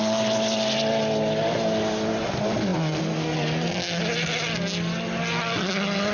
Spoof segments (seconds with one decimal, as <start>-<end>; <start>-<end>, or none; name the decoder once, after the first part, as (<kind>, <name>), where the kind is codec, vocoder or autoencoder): none